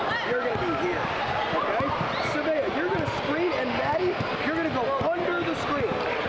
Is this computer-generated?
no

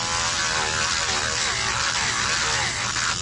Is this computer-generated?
no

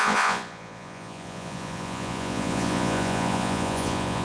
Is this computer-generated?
yes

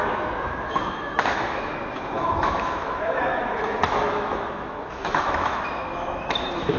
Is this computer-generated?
yes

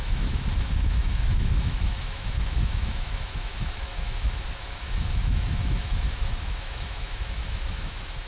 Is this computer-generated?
yes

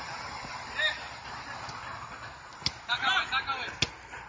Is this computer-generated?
no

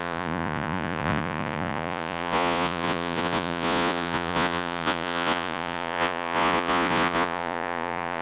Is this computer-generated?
yes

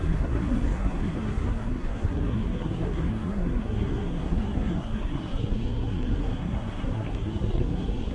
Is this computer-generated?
yes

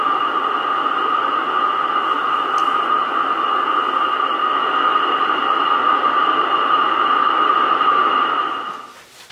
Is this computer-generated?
no